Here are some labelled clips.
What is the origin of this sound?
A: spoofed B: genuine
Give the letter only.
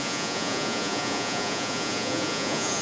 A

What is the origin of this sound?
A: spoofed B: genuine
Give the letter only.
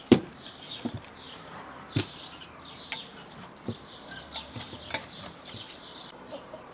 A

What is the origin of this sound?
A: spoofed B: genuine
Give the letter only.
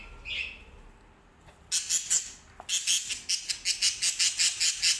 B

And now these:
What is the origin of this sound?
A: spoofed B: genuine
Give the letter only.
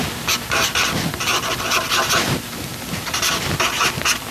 B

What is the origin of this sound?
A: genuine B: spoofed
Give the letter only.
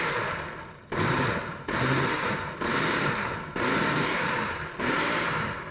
B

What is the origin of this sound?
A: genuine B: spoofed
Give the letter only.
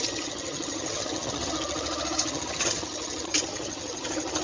B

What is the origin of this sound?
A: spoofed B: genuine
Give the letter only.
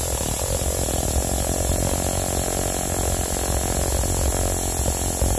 B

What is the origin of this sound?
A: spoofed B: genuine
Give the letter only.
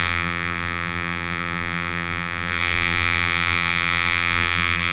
A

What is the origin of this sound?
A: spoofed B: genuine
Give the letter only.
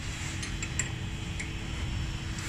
B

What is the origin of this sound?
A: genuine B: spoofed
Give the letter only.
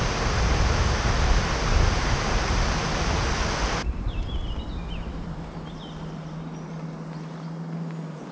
A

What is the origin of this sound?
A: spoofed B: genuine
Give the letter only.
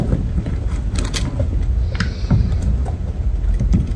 B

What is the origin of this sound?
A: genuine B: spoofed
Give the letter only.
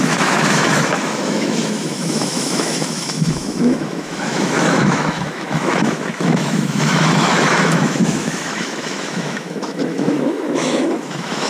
B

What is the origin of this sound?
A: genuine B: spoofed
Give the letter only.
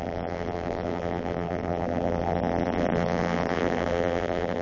B